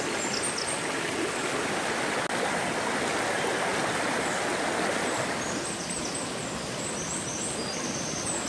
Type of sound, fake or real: real